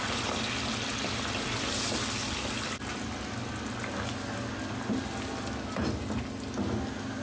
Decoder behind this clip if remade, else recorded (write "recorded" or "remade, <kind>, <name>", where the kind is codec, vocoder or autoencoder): recorded